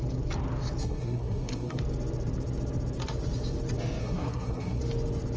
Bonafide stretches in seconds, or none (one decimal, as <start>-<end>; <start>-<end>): 0.0-0.8; 1.8-4.0; 4.8-5.4